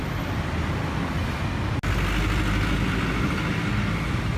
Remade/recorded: recorded